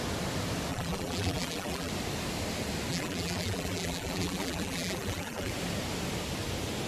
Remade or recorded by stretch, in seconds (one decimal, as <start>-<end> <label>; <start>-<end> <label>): 0.0-0.7 recorded; 0.7-1.9 remade; 1.9-2.9 recorded; 2.9-5.5 remade; 5.5-6.9 recorded

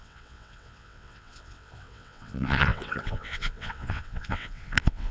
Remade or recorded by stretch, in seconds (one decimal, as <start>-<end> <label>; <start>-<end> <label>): 0.0-5.1 remade

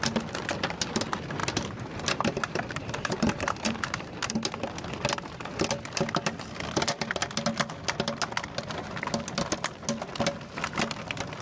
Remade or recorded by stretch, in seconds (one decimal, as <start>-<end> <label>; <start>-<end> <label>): 0.0-1.4 recorded; 1.4-4.3 remade; 4.3-11.4 recorded

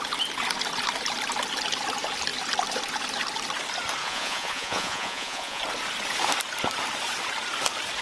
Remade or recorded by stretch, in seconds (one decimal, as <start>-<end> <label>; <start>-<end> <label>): 0.0-4.0 recorded; 4.0-5.6 remade; 5.6-8.0 recorded

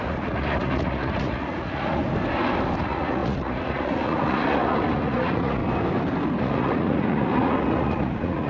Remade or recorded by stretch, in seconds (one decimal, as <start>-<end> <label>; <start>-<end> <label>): 0.0-2.0 remade; 2.0-2.8 recorded; 2.8-5.6 remade; 5.6-6.4 recorded; 6.4-8.5 remade

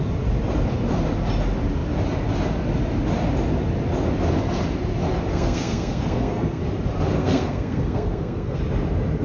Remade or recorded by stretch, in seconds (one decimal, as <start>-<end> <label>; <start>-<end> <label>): 0.0-5.3 recorded; 5.3-6.6 remade; 6.6-7.2 recorded; 7.2-8.6 remade; 8.6-9.2 recorded

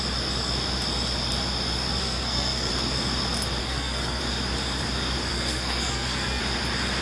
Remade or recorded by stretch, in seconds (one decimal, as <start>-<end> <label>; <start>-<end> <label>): 0.0-2.0 recorded; 2.0-2.7 remade; 2.7-3.6 recorded; 3.6-4.2 remade; 4.2-5.3 recorded; 5.3-6.4 remade; 6.4-7.0 recorded

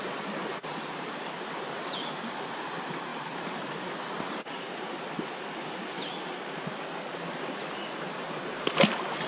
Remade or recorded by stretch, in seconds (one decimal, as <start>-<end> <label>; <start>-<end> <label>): 0.0-9.3 recorded